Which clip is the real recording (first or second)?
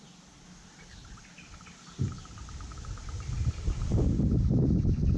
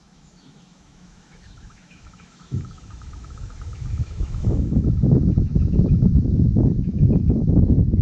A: first